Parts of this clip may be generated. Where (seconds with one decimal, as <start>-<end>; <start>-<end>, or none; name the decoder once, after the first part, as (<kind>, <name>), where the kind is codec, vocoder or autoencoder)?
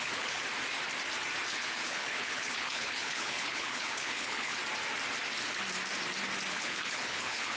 0.0-0.4 (codec, HILCodec); 1.5-4.5; 6.5-7.6